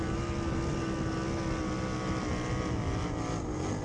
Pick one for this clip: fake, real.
real